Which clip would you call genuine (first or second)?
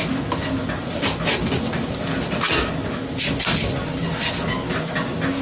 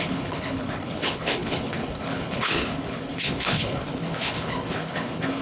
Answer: first